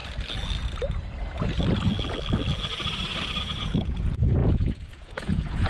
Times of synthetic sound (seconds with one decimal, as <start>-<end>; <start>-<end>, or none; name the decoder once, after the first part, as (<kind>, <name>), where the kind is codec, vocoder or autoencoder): 3.4-5.7 (vocoder, Vocos)